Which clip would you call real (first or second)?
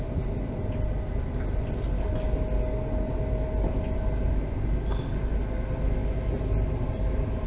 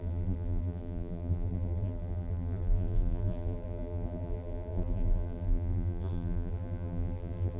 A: first